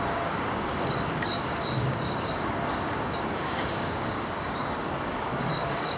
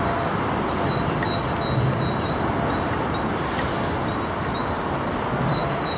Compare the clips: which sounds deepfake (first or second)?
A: first